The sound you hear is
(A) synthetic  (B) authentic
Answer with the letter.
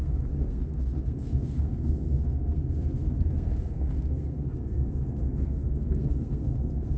A